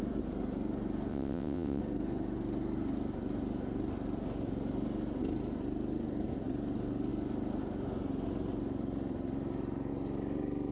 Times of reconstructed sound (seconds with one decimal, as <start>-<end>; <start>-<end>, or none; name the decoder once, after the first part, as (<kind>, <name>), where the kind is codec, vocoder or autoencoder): 1.1-1.8 (vocoder, WaveNeXt)